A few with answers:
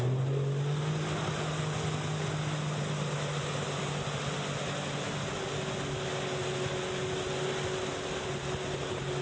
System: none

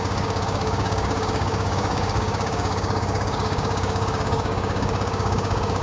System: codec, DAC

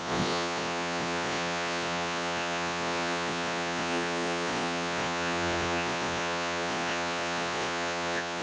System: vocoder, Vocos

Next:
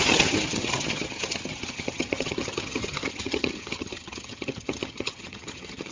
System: vocoder, HiFi-GAN